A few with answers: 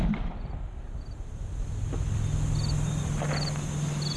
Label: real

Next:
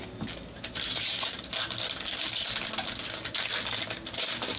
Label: real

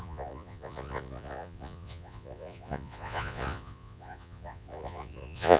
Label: fake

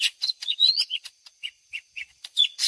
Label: fake